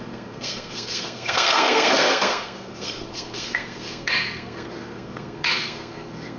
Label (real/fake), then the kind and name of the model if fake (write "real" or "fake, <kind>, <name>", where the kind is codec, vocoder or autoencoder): fake, codec, SNAC